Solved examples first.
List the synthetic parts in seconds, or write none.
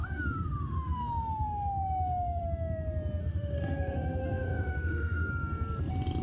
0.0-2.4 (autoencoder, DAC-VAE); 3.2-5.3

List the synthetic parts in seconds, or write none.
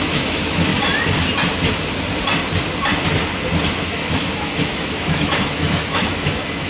0.0-0.7 (autoencoder, DAC-VAE); 3.9-6.7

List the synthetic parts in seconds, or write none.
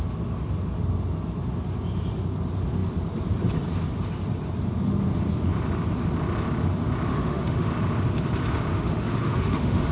7.1-7.7 (autoencoder, DAC-VAE); 8.7-9.9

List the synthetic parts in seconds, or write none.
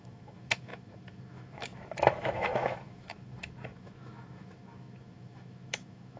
0.0-6.2 (autoencoder, DAC-VAE)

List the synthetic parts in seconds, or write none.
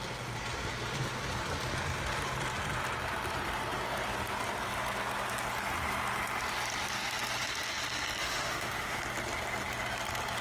8.2-9.0 (autoencoder, DAC-VAE)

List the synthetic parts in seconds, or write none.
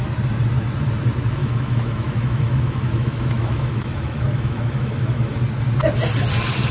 1.4-5.4 (autoencoder, DAC-VAE)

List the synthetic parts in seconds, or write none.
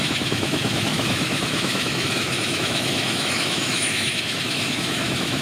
0.0-5.4 (autoencoder, DAC-VAE)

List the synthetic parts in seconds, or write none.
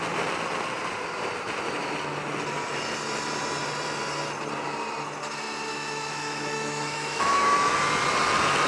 5.7-7.7 (autoencoder, DAC-VAE)